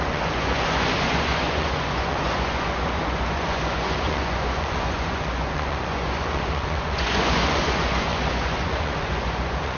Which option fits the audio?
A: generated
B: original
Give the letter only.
A